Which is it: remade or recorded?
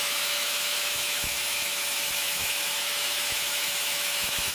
remade